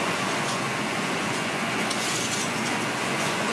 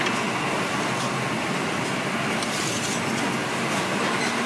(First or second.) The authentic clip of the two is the second